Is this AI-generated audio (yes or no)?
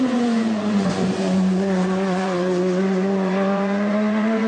yes